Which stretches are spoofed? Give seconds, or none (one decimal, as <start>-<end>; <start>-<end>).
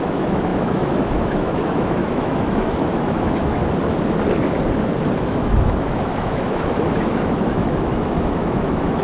0.0-3.6; 5.2-9.0